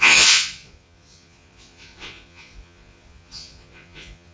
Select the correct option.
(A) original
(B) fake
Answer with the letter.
B